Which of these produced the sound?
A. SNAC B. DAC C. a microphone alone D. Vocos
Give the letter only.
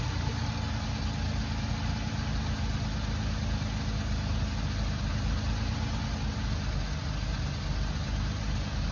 C